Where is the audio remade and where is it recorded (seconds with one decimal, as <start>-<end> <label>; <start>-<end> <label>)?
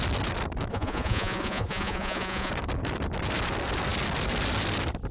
0.0-0.7 recorded; 0.7-2.5 remade; 2.5-5.1 recorded